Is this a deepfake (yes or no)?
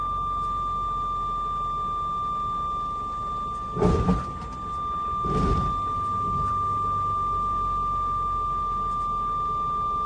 no